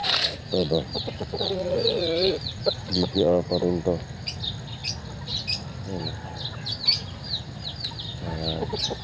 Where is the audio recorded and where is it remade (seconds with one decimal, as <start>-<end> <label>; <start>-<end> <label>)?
0.0-3.5 remade; 3.5-9.0 recorded